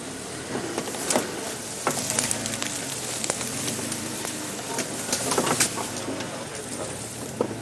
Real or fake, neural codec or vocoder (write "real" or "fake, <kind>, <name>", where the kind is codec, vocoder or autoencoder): fake, vocoder, BigVGAN v2